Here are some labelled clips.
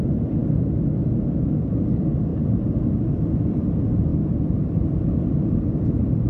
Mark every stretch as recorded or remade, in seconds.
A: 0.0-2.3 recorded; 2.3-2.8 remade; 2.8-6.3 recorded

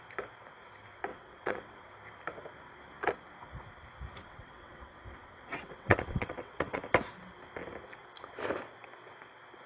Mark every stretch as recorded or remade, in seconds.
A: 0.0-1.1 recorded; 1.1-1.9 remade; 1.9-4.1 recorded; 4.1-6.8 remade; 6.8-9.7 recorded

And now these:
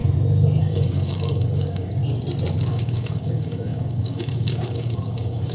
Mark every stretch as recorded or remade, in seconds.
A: 0.0-0.6 recorded; 0.6-2.0 remade; 2.0-2.7 recorded; 2.7-5.5 remade